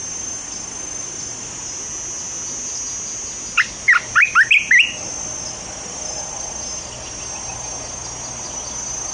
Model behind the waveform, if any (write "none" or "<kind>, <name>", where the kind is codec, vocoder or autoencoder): none